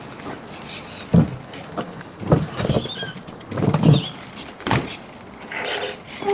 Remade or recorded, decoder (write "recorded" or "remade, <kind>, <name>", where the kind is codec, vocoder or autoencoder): recorded